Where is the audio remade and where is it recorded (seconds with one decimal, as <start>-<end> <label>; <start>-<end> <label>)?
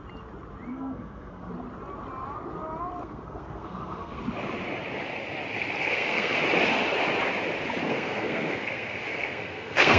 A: 0.0-0.7 recorded; 0.7-1.5 remade; 1.5-3.0 recorded; 3.0-4.2 remade; 4.2-5.8 recorded; 5.8-6.4 remade; 6.4-7.9 recorded; 7.9-10.0 remade